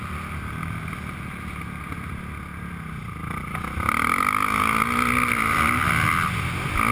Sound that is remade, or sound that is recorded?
recorded